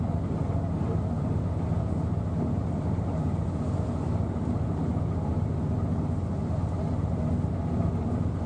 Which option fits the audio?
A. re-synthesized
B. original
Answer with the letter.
B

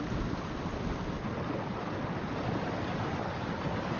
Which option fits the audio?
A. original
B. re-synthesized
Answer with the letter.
A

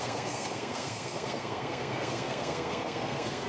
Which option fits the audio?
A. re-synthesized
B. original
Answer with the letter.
A